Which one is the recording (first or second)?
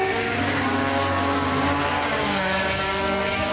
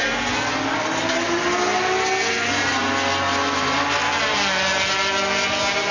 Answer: second